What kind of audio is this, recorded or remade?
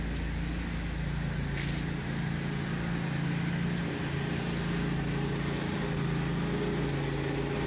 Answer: recorded